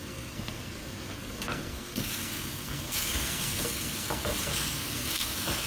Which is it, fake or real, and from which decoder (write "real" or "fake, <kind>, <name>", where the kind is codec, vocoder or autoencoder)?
fake, codec, SNAC